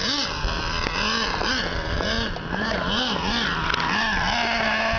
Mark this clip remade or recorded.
recorded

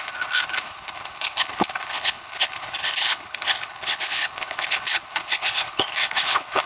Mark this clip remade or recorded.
remade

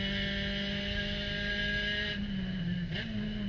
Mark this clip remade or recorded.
recorded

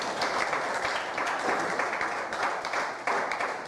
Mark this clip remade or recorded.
recorded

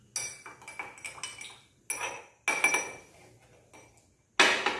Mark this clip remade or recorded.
recorded